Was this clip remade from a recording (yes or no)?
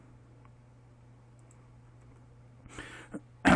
no